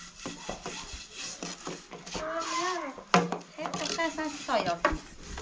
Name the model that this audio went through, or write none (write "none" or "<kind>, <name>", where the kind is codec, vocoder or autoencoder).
none